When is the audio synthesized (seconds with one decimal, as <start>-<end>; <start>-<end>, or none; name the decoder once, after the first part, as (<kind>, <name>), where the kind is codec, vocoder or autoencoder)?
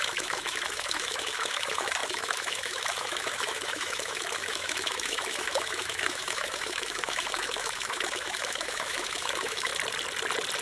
0.0-9.7 (autoencoder, DAC-VAE)